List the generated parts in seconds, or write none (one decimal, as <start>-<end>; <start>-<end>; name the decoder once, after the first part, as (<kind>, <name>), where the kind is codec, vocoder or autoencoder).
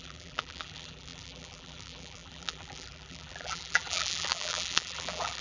0.0-5.4 (vocoder, BigVGAN v2)